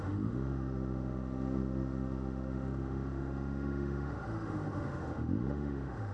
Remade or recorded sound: remade